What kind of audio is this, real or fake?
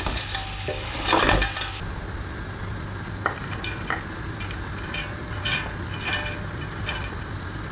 real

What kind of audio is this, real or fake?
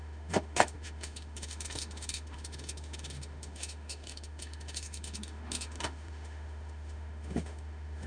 fake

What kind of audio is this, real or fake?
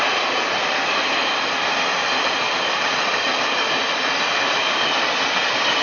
real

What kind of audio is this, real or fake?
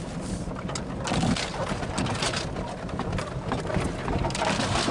real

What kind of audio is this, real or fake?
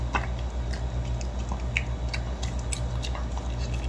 real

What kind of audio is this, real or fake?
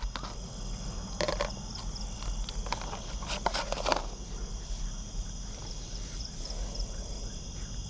real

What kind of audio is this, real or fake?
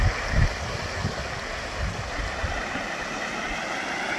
real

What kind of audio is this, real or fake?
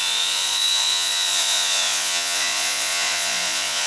fake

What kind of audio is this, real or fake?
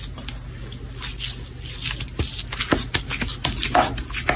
real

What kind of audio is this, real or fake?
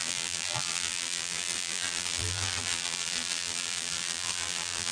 fake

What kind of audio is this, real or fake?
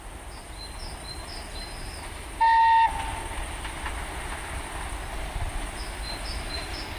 real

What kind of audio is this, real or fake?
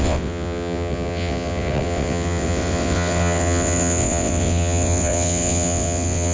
fake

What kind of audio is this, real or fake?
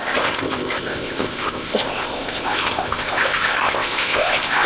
fake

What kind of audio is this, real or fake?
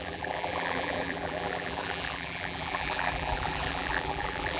fake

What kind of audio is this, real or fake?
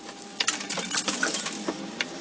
real